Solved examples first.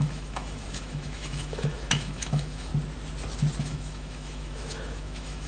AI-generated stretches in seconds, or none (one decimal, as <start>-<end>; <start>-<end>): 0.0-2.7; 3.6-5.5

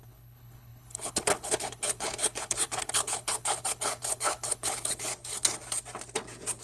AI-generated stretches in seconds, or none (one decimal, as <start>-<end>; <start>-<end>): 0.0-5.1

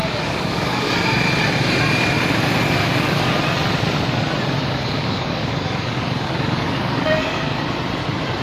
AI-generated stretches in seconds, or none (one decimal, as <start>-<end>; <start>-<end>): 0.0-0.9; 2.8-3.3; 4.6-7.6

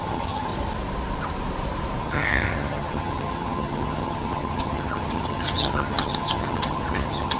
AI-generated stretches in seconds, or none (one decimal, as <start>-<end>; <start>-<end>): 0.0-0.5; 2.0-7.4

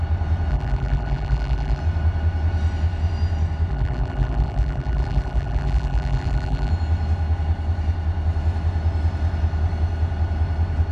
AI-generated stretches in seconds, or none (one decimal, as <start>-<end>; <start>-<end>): 0.5-1.8; 3.7-6.7

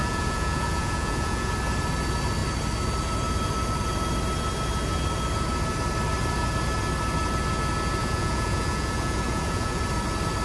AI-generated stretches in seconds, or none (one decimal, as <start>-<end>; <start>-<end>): 0.0-1.5; 8.0-9.8